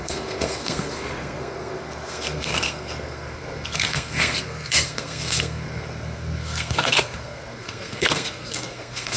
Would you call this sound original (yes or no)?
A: no